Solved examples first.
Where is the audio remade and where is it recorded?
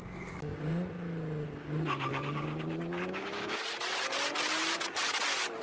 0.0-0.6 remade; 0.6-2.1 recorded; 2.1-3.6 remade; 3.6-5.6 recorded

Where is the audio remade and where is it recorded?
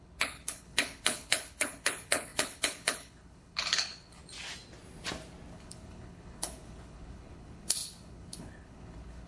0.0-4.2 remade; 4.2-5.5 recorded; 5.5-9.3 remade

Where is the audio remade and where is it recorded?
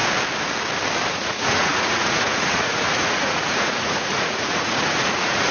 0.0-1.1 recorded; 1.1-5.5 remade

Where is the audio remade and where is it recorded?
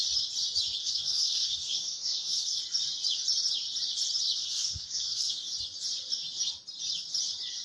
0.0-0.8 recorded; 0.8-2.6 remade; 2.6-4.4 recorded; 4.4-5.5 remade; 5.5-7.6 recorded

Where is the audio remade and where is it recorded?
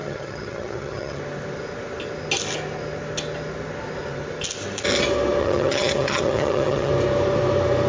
0.0-1.2 remade; 1.2-5.4 recorded; 5.4-6.9 remade; 6.9-7.9 recorded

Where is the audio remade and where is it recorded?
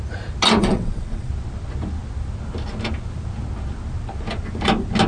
0.0-0.6 recorded; 0.6-1.3 remade; 1.3-5.1 recorded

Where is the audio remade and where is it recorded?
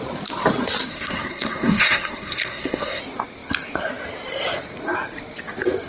0.0-0.9 recorded; 0.9-3.0 remade; 3.0-5.9 recorded